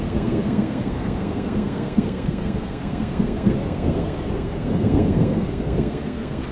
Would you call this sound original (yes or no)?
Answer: no